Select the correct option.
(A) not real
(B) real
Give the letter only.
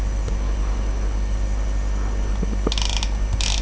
B